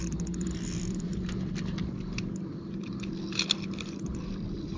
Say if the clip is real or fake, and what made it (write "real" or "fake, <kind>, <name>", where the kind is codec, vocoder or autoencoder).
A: fake, vocoder, BigVGAN v2